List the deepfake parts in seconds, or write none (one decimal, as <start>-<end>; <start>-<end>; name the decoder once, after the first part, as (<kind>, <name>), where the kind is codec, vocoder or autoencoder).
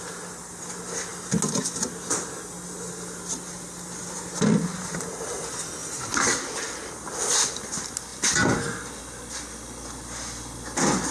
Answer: 5.8-7.5 (vocoder, BigVGAN v2)